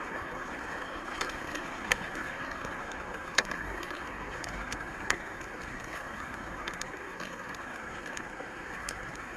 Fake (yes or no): yes